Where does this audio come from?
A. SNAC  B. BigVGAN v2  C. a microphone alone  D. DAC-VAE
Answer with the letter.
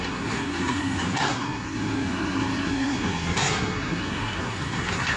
A